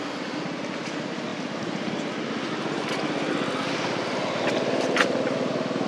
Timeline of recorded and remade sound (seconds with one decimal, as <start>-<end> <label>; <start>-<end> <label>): 0.0-5.9 recorded